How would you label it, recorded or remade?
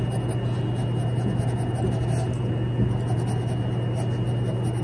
recorded